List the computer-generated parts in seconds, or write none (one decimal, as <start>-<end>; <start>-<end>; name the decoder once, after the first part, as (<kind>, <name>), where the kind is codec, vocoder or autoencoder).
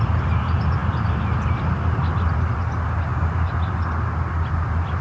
none